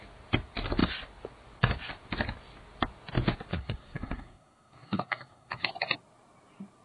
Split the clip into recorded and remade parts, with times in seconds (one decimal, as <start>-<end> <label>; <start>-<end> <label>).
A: 0.0-3.5 recorded; 3.5-5.7 remade; 5.7-6.8 recorded